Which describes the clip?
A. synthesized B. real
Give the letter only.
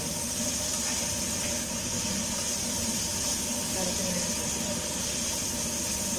B